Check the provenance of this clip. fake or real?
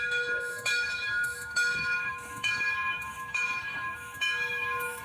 fake